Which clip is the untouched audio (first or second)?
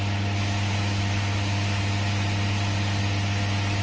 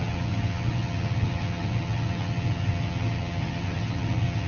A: first